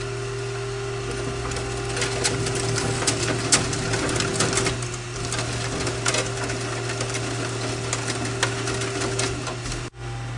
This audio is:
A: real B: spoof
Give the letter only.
A